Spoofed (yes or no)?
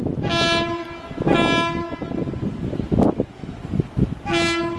no